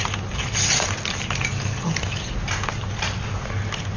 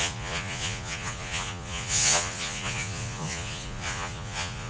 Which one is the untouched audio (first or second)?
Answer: first